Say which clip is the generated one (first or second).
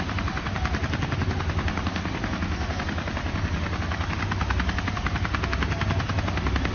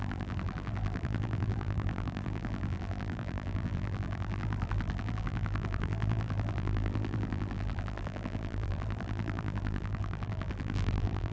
second